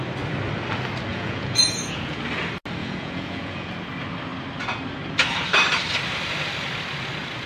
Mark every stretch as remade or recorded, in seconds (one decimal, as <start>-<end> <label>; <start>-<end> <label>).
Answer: 0.0-1.1 recorded; 1.1-2.2 remade; 2.2-2.8 recorded; 2.8-3.7 remade; 3.7-7.5 recorded